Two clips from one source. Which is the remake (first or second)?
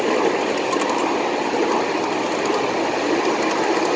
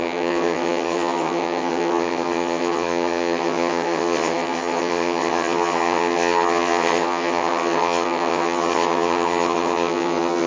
second